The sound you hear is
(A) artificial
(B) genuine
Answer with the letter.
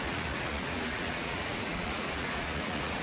A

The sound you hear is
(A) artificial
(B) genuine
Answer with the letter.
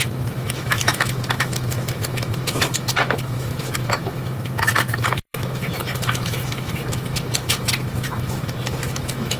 A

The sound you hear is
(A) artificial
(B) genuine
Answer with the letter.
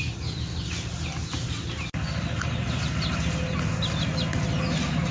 B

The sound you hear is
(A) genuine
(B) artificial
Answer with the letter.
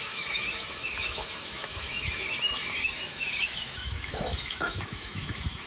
B